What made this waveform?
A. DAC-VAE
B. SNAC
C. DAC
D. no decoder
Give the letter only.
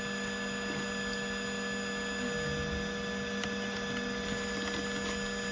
D